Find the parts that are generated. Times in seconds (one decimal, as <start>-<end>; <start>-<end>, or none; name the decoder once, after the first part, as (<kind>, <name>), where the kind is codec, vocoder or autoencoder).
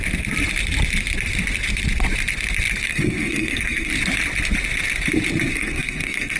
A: 2.9-3.9 (codec, SNAC); 5.5-6.4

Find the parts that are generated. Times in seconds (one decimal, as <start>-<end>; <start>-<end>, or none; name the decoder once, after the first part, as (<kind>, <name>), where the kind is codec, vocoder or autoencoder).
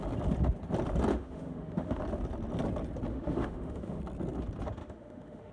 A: 1.1-2.0 (autoencoder, DAC-VAE); 3.1-4.0; 4.8-5.5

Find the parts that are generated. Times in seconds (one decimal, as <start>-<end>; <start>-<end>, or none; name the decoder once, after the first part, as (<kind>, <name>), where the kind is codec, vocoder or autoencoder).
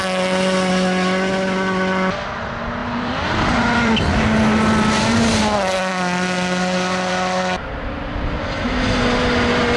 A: 2.8-4.0 (vocoder, BigVGAN v2)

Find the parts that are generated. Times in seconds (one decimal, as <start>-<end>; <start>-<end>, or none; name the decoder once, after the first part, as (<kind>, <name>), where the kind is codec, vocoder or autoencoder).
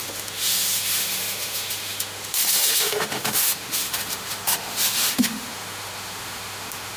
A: 0.0-7.0 (autoencoder, DAC-VAE)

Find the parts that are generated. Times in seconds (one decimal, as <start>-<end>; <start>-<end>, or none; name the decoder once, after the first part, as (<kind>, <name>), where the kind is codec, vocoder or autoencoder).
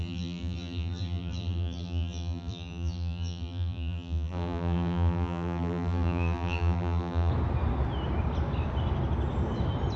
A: 0.0-7.3 (vocoder, BigVGAN v2)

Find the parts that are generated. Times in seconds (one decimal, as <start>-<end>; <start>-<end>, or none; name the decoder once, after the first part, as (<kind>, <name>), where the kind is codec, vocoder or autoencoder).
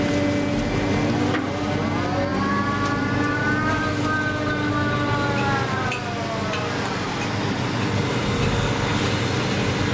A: none